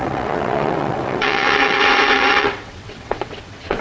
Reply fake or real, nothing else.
fake